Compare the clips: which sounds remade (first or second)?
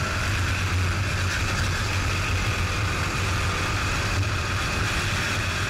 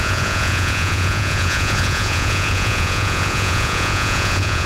second